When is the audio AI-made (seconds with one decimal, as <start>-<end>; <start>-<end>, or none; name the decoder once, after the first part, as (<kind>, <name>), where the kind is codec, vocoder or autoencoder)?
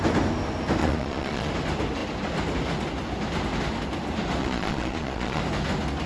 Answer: 0.8-1.5 (vocoder, Vocos); 4.4-5.4